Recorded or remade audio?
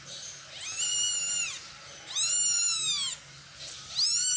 recorded